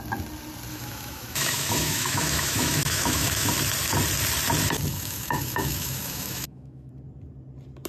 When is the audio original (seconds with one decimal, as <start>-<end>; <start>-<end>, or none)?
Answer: 0.0-0.7; 3.5-4.9; 6.9-7.9